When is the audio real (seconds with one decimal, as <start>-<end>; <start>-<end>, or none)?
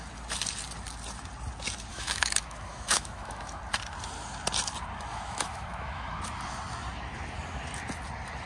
0.0-1.9; 3.6-5.1; 6.2-8.5